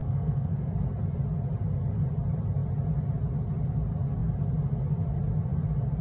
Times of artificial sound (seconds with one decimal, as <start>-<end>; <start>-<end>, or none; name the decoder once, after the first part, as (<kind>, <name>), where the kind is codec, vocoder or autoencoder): 0.0-0.7 (codec, SNAC)

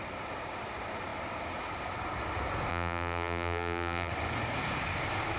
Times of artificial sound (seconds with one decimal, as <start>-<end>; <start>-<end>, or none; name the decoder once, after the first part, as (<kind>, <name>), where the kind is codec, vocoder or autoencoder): 2.7-4.1 (vocoder, BigVGAN v2)

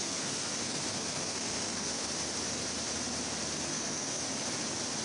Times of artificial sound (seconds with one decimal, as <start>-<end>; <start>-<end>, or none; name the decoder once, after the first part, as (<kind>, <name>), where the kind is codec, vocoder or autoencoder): 0.0-2.1 (codec, SNAC); 3.7-4.2

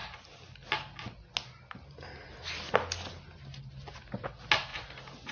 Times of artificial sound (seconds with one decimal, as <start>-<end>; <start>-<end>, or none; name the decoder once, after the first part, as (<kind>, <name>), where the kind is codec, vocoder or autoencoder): 4.7-5.3 (vocoder, BigVGAN v2)

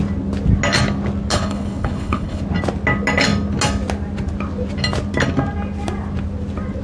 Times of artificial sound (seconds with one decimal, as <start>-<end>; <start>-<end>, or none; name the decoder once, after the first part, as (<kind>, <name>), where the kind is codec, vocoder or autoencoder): 1.3-2.4 (codec, HILCodec)

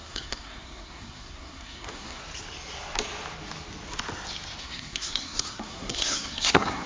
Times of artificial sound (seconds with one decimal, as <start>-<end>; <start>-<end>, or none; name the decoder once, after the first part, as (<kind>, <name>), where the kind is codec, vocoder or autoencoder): 0.0-2.2 (codec, SNAC); 4.6-6.9